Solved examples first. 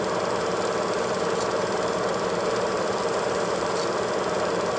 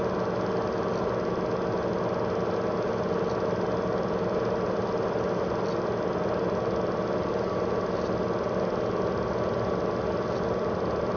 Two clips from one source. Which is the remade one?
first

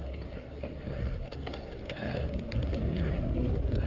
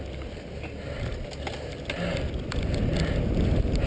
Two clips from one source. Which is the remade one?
first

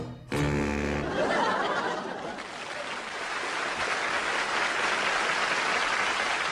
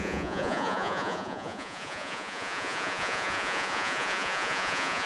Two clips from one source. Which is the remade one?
second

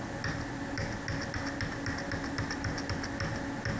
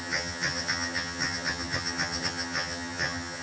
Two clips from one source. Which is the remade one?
second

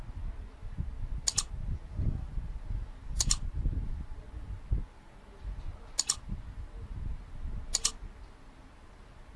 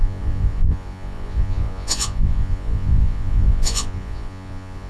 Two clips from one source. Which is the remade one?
second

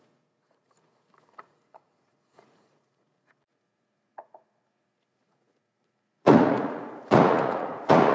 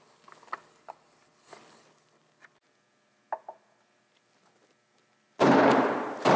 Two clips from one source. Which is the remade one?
first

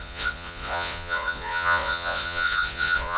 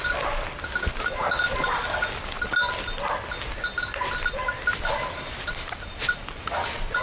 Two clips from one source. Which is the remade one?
first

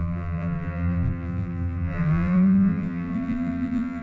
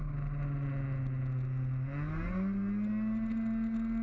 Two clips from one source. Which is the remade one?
first